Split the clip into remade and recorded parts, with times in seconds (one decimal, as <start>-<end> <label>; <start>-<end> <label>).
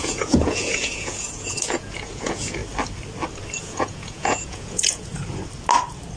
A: 0.0-2.6 remade; 2.6-3.6 recorded; 3.6-5.1 remade; 5.1-6.2 recorded